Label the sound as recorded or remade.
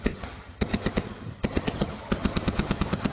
remade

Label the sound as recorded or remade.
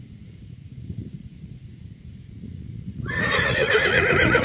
remade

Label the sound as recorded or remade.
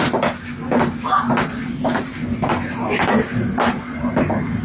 recorded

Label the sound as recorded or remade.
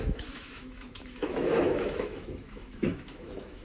remade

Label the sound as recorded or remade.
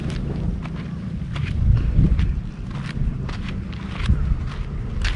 recorded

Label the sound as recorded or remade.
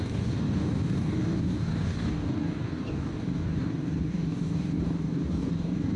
remade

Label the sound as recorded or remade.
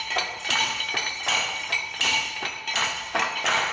recorded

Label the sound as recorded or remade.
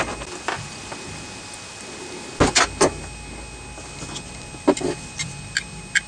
recorded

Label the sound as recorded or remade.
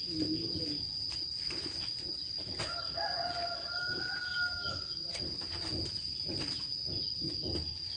recorded